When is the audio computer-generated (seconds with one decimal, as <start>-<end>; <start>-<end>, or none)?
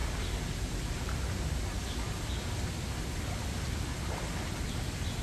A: none